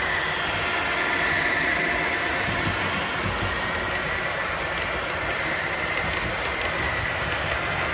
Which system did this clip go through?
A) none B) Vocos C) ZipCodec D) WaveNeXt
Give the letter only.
A